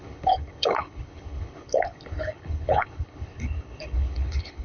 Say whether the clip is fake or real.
fake